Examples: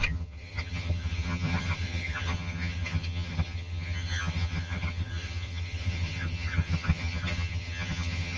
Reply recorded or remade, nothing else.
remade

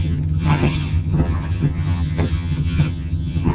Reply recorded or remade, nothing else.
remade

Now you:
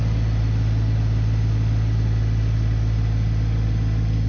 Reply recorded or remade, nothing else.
recorded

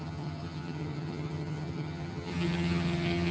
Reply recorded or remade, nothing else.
remade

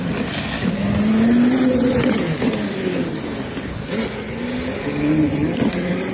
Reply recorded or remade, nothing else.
recorded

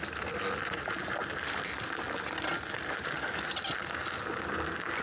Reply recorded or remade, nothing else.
recorded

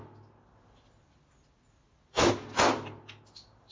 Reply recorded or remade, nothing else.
recorded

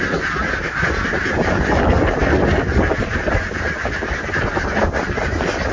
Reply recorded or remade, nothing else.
recorded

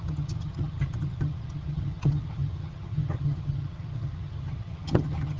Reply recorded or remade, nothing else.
remade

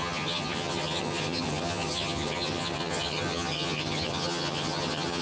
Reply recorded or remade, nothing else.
remade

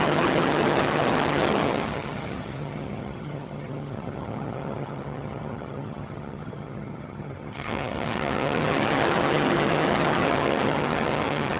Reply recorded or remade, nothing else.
remade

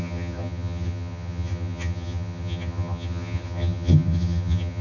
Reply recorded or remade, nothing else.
remade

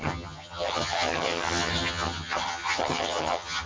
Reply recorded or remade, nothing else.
remade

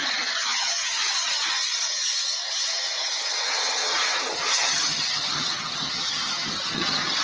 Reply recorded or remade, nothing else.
remade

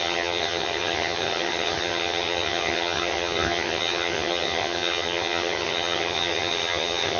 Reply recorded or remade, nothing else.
remade